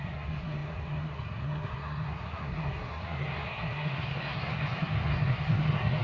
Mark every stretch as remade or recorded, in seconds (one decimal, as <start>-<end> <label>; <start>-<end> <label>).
0.0-6.0 remade

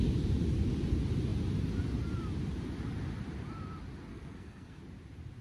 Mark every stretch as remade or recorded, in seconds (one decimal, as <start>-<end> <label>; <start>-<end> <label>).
0.0-4.1 recorded; 4.1-4.8 remade; 4.8-5.4 recorded

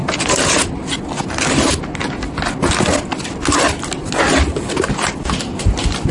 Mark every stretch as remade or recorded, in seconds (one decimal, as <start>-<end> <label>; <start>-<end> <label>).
0.0-6.1 recorded

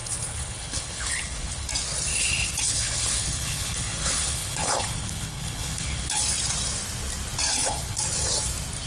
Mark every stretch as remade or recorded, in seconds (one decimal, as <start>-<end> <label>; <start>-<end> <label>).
0.0-1.7 remade; 1.7-2.1 recorded; 2.1-6.2 remade; 6.2-7.5 recorded; 7.5-8.0 remade; 8.0-8.9 recorded